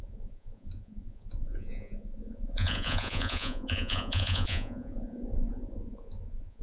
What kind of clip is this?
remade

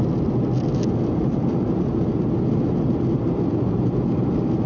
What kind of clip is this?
recorded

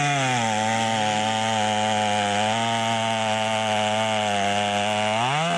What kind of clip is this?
recorded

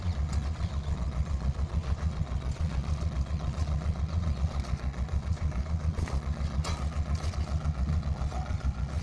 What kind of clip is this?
remade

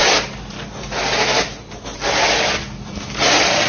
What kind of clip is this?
recorded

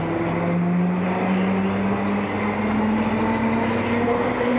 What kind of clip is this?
recorded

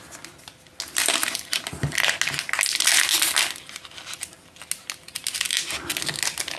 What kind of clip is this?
recorded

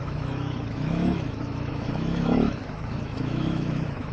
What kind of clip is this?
remade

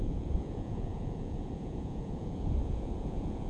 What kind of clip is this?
remade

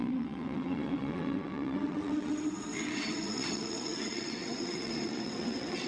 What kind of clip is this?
remade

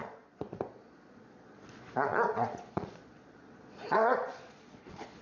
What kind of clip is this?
remade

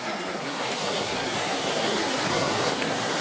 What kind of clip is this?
remade